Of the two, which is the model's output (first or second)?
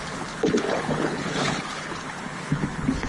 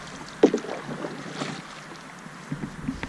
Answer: first